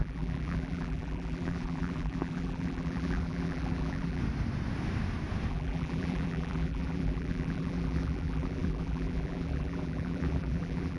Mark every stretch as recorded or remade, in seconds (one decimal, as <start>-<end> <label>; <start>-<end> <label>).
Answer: 0.0-4.2 remade; 4.2-5.5 recorded; 5.5-11.0 remade